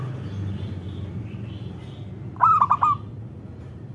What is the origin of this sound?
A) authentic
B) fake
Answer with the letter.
A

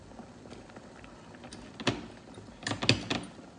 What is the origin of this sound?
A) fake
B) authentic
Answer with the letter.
B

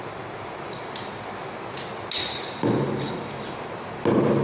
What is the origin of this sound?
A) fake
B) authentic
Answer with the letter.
B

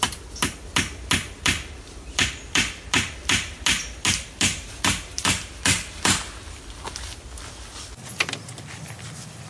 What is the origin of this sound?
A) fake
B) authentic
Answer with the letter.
B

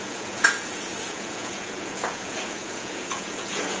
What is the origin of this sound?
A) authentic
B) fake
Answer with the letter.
B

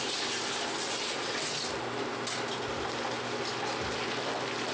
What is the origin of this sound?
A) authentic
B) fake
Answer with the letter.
A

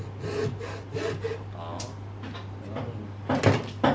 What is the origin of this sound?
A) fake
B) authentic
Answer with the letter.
B